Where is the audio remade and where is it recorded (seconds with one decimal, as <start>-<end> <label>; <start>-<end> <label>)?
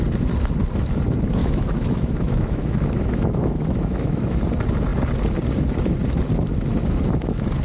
0.0-1.4 recorded; 1.4-4.4 remade; 4.4-7.6 recorded